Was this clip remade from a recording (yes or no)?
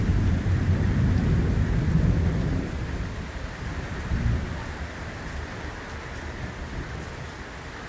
no